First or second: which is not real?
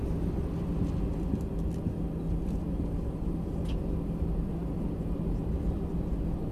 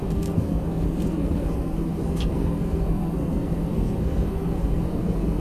second